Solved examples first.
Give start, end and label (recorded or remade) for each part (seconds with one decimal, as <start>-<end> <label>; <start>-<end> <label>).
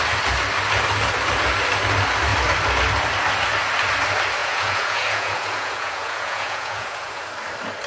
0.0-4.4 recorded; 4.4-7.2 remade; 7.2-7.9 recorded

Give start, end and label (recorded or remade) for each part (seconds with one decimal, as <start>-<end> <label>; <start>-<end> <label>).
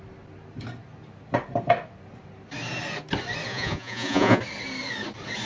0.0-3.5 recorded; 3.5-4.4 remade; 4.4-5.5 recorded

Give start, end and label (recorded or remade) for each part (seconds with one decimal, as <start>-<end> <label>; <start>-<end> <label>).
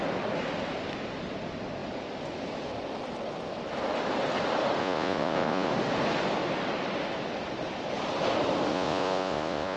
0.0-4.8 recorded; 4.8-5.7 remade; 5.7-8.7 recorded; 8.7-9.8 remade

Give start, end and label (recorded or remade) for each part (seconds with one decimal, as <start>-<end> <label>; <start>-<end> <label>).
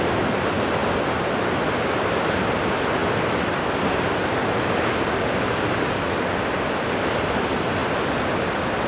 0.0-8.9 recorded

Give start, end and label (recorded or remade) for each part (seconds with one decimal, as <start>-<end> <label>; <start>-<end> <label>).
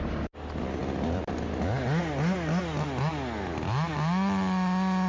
0.0-5.1 recorded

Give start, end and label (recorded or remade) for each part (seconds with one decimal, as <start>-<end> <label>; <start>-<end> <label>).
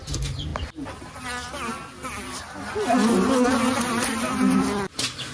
0.0-5.3 recorded